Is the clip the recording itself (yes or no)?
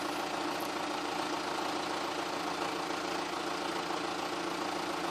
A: yes